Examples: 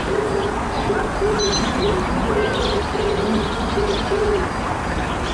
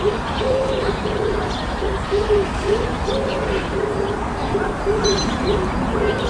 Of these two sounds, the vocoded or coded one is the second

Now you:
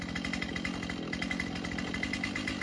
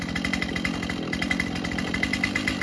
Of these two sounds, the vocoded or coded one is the second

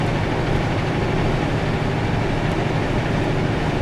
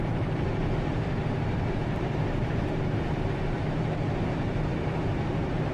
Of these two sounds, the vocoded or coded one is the second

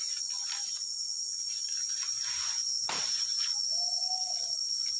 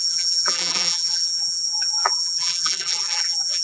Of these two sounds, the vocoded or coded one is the second